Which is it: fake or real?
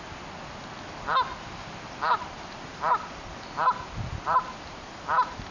real